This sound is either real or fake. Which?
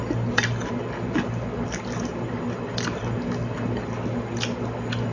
real